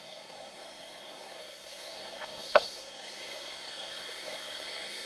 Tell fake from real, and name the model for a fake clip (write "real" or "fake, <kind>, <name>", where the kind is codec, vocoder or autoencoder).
fake, codec, SNAC